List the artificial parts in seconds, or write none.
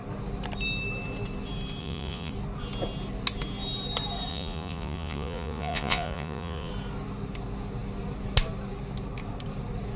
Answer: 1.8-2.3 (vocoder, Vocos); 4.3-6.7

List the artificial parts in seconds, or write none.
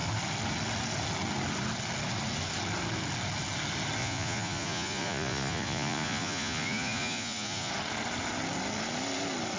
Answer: 4.0-7.7 (vocoder, Vocos)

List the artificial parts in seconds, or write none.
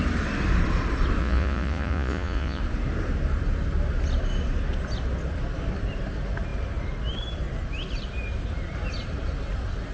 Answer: 1.2-2.6 (vocoder, Vocos)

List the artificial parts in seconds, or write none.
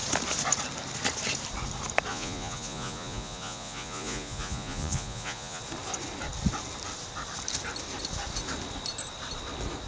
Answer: 2.1-5.6 (vocoder, Vocos)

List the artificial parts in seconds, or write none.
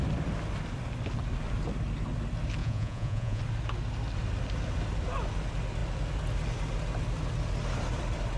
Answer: 2.6-3.4 (vocoder, Vocos)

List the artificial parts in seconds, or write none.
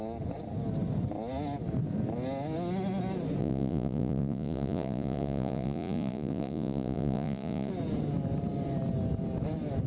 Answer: 3.4-7.7 (vocoder, Vocos)